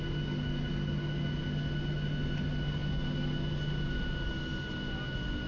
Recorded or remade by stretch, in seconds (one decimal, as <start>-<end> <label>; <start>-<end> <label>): 0.0-5.5 recorded